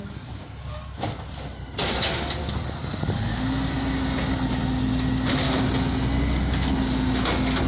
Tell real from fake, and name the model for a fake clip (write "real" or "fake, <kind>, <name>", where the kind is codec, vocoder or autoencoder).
real